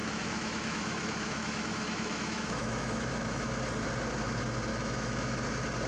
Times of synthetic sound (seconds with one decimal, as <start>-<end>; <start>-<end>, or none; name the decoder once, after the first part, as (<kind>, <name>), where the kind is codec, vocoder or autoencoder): 0.0-3.5 (autoencoder, DAC-VAE); 4.7-5.4